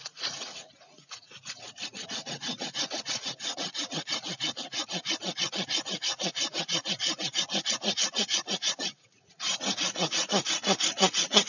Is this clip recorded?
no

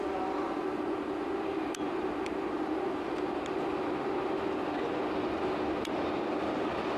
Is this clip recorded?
yes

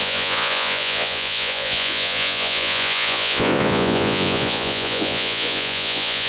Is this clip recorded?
no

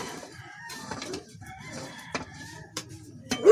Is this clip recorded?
no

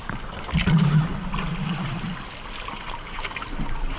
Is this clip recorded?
yes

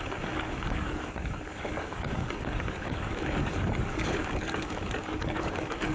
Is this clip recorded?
no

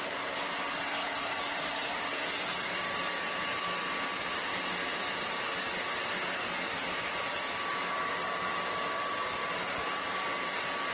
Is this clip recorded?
yes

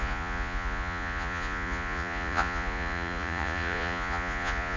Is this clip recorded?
no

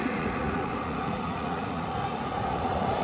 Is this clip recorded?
no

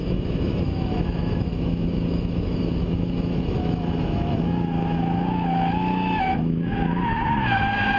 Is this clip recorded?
no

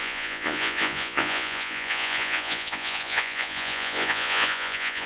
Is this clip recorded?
no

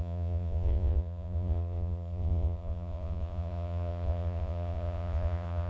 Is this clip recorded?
no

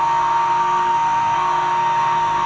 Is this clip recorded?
no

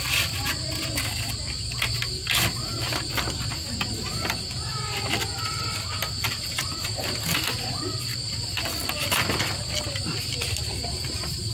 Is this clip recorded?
yes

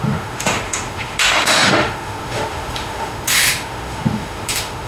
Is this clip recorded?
no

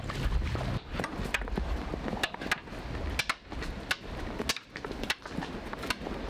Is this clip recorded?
yes